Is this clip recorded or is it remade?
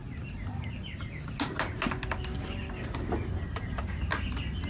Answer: recorded